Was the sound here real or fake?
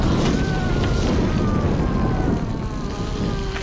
real